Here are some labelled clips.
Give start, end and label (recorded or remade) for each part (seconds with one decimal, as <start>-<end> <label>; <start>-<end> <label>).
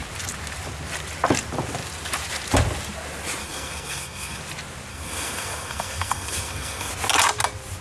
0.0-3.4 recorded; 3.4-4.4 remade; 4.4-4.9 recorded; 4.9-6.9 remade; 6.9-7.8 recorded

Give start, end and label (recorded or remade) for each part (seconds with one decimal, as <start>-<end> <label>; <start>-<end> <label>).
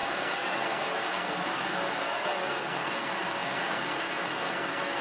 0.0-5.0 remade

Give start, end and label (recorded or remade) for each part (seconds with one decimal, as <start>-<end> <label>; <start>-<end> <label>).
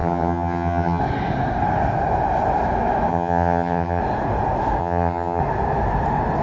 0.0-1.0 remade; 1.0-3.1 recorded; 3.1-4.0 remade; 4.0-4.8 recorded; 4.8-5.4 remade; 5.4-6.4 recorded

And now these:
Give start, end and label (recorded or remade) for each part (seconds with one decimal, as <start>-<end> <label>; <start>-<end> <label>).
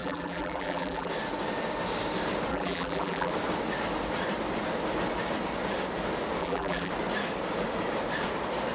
0.0-1.1 remade; 1.1-2.5 recorded; 2.5-3.3 remade; 3.3-6.4 recorded; 6.4-6.9 remade; 6.9-8.7 recorded